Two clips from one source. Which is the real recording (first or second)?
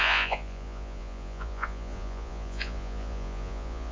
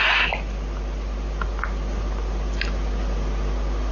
second